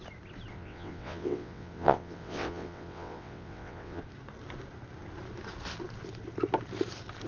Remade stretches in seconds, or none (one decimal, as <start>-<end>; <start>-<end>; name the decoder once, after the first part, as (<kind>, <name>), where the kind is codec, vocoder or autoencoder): 0.5-4.0 (vocoder, WaveNeXt)